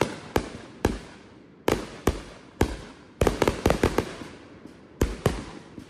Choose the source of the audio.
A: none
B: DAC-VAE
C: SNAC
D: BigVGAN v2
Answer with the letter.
D